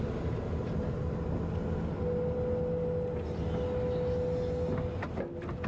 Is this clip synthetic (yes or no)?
no